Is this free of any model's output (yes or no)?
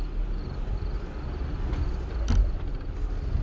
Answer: yes